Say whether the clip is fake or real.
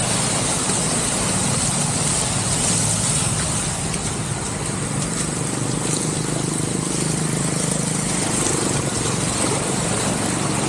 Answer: real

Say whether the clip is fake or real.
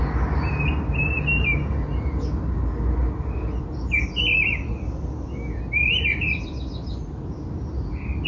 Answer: real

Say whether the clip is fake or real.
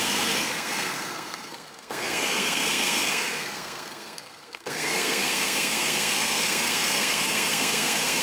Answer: fake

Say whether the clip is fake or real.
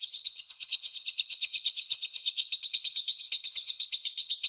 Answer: fake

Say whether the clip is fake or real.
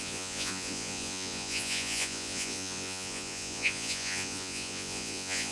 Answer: fake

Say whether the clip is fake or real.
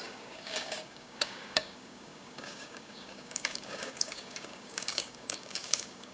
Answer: fake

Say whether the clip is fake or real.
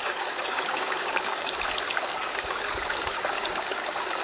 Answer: fake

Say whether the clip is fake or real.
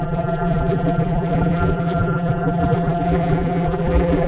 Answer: fake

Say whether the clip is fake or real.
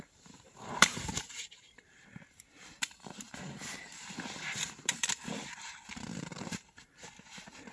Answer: fake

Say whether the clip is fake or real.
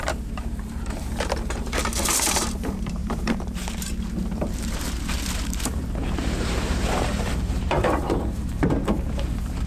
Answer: fake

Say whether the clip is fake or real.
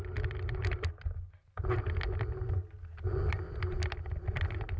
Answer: real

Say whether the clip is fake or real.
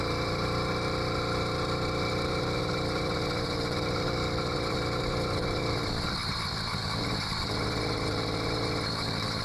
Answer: fake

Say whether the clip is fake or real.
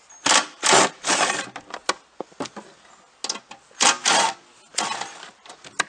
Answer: real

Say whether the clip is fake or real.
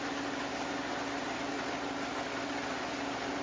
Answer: real